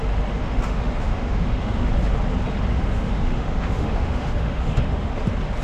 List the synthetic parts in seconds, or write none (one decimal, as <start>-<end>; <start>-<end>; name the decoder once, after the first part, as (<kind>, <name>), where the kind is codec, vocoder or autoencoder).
0.4-1.9 (autoencoder, DAC-VAE); 2.7-5.1